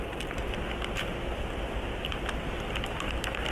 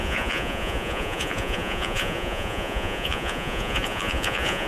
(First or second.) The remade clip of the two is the second